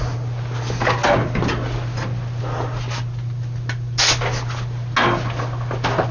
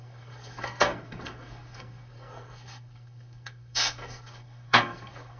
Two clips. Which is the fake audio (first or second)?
second